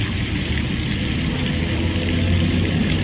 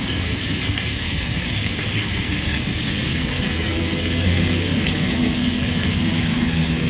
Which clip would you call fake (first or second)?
second